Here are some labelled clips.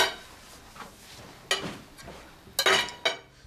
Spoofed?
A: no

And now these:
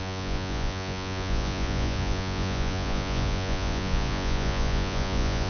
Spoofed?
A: yes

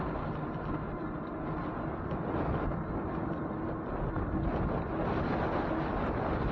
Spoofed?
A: no